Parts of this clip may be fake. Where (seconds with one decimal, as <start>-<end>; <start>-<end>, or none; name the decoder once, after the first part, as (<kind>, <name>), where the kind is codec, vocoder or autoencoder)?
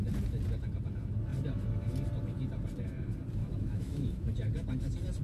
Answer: 3.4-4.3 (autoencoder, DAC-VAE)